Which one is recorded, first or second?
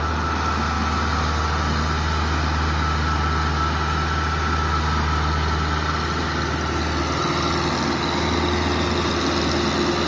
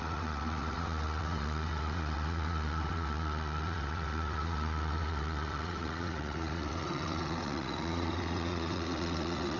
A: first